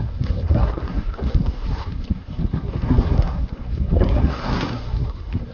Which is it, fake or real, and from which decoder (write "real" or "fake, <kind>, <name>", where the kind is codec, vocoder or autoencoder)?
fake, codec, SNAC